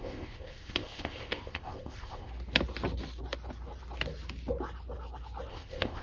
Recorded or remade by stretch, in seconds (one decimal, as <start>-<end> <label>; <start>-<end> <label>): 0.0-2.3 remade; 2.3-5.5 recorded; 5.5-6.0 remade